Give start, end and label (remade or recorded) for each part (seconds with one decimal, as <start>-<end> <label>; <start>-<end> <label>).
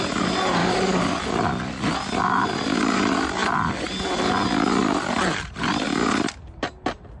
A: 0.0-0.6 recorded; 0.6-1.2 remade; 1.2-7.2 recorded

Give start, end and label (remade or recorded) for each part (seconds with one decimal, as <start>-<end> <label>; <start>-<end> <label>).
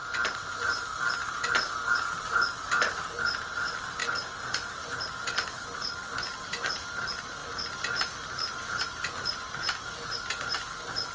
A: 0.0-4.0 remade; 4.0-5.1 recorded; 5.1-7.4 remade; 7.4-8.3 recorded; 8.3-11.1 remade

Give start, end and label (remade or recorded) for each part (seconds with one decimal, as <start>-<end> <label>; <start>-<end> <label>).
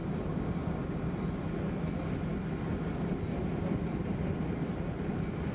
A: 0.0-1.0 remade; 1.0-5.5 recorded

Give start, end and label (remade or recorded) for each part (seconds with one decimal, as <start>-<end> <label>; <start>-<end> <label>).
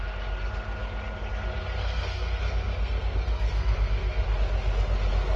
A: 0.0-1.8 recorded; 1.8-4.2 remade; 4.2-5.4 recorded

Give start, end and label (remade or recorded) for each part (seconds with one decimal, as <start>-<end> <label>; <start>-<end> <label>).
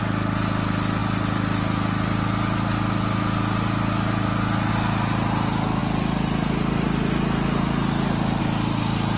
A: 0.0-9.2 recorded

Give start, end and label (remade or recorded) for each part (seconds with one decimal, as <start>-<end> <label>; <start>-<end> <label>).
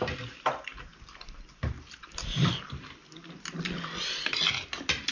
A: 0.0-5.1 recorded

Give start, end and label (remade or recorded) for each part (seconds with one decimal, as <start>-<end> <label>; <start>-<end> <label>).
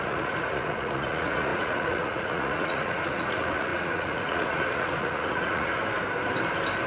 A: 0.0-5.8 remade; 5.8-6.9 recorded